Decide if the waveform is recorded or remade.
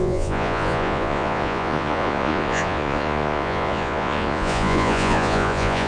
remade